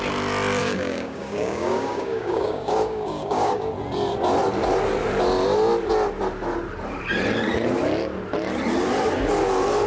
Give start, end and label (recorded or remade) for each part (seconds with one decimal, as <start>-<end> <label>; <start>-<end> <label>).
0.0-0.6 recorded; 0.6-3.7 remade; 3.7-9.9 recorded